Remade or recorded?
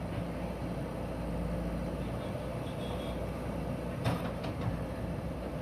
recorded